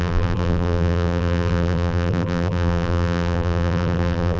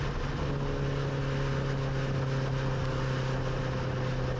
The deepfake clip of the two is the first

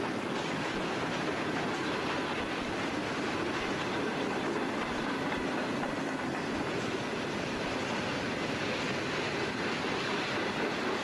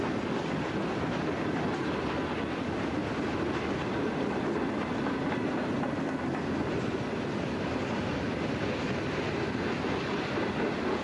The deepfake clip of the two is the first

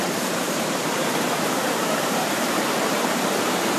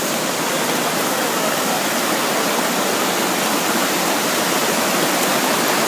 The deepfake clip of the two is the first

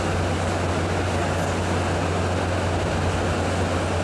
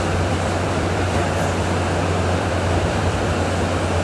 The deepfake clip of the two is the second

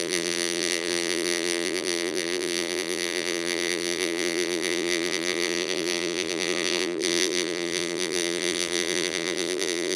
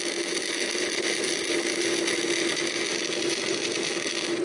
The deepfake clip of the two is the first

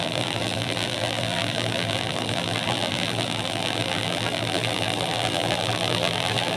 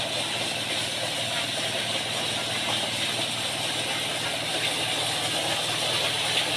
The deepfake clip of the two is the first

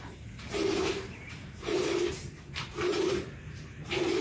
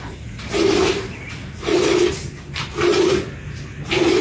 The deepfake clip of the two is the first